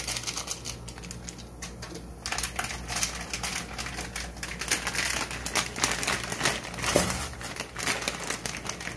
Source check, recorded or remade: recorded